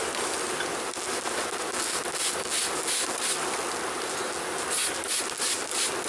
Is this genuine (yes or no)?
yes